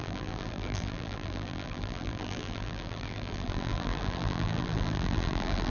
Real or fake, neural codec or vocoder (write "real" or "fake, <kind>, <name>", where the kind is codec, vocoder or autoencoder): fake, vocoder, BigVGAN v2